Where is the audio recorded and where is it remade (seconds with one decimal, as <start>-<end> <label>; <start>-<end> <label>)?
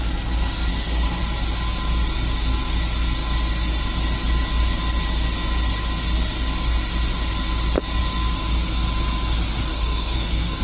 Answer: 0.0-0.7 recorded; 0.7-1.2 remade; 1.2-9.7 recorded; 9.7-10.6 remade